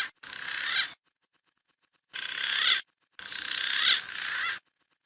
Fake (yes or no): no